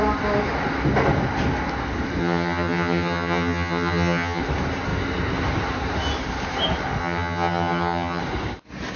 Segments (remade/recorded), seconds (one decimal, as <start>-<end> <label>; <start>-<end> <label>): 0.0-2.2 recorded; 2.2-4.4 remade; 4.4-7.0 recorded; 7.0-8.2 remade; 8.2-9.0 recorded